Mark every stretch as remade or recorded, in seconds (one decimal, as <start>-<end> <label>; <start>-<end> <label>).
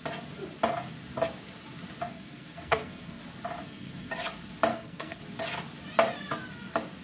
0.0-2.1 recorded; 2.1-3.2 remade; 3.2-3.6 recorded; 3.6-4.1 remade; 4.1-4.7 recorded; 4.7-5.2 remade; 5.2-7.0 recorded